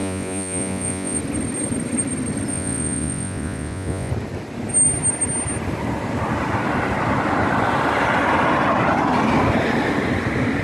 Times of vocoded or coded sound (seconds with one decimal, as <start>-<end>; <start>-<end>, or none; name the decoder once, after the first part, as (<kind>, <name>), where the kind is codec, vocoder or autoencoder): 0.0-1.2 (vocoder, Vocos); 2.5-4.1